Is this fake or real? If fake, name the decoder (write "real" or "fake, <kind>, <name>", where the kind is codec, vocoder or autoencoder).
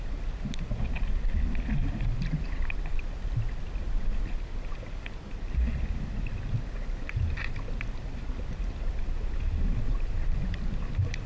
real